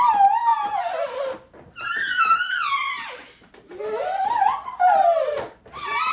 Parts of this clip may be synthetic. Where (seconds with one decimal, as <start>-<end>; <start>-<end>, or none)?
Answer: none